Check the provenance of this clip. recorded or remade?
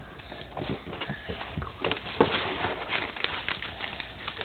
recorded